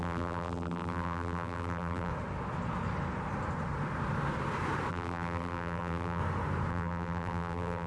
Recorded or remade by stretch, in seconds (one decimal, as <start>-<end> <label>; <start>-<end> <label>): 0.0-2.1 remade; 2.1-4.9 recorded; 4.9-6.2 remade; 6.2-6.7 recorded; 6.7-7.9 remade